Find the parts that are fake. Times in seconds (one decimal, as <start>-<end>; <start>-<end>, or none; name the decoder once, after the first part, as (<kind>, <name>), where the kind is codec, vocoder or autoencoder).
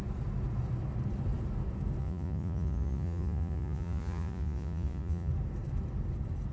2.0-5.3 (vocoder, Vocos)